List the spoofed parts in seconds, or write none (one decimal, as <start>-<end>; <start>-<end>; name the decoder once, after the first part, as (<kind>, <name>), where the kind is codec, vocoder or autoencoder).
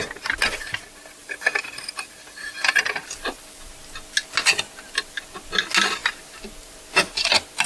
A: 1.2-3.7 (vocoder, BigVGAN v2)